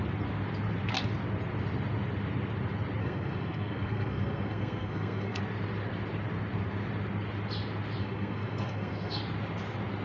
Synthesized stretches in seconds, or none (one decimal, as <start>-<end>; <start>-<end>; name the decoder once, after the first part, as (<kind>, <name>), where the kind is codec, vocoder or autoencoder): 3.0-5.4 (codec, SNAC); 8.0-9.2